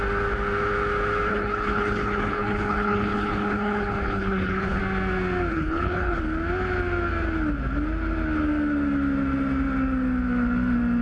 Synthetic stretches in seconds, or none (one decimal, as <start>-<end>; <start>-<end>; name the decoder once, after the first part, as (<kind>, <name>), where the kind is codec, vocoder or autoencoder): 1.3-4.8 (codec, HILCodec); 5.5-6.2